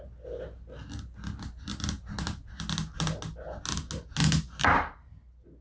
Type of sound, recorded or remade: recorded